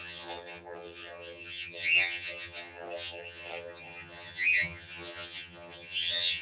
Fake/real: fake